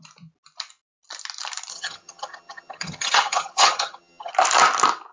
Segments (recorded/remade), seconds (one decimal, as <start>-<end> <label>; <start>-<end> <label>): 0.0-1.7 recorded; 1.7-4.3 remade; 4.3-5.1 recorded